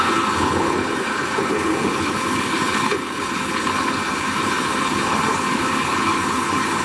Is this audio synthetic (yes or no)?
yes